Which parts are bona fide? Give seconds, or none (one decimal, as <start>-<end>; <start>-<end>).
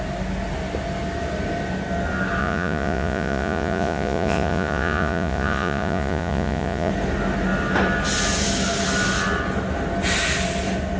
0.0-2.4; 6.9-11.0